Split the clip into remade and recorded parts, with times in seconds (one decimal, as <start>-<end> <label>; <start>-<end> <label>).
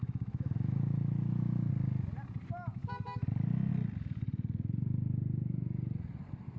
0.0-1.7 remade; 1.7-6.6 recorded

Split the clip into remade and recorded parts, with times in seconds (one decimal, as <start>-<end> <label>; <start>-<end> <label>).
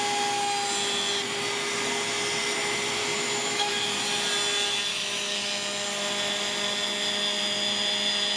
0.0-3.0 recorded; 3.0-3.7 remade; 3.7-4.9 recorded; 4.9-5.5 remade; 5.5-8.4 recorded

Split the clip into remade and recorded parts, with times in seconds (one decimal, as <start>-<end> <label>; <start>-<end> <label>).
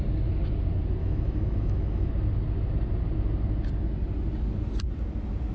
0.0-1.0 recorded; 1.0-2.1 remade; 2.1-5.5 recorded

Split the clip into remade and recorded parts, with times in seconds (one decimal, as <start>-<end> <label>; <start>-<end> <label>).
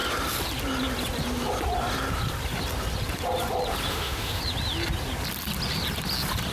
0.0-3.9 recorded; 3.9-4.4 remade; 4.4-6.5 recorded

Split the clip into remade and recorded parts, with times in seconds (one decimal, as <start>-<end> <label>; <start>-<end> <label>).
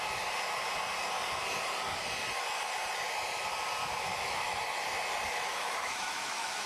0.0-3.8 recorded; 3.8-4.6 remade; 4.6-5.5 recorded; 5.5-6.7 remade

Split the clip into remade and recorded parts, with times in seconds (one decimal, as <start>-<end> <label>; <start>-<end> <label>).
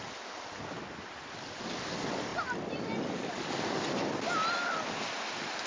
0.0-5.7 recorded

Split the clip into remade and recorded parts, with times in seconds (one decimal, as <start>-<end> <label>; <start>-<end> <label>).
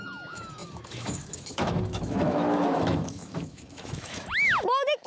0.0-5.1 remade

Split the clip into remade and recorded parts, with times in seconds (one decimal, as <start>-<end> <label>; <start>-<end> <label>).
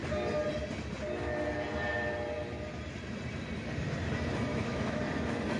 0.0-4.5 recorded; 4.5-5.0 remade; 5.0-5.6 recorded